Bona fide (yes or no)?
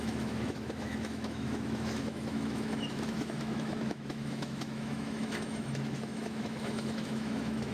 no